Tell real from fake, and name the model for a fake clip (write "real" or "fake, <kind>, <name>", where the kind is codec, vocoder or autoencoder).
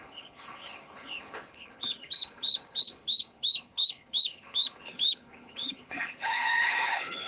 fake, codec, HILCodec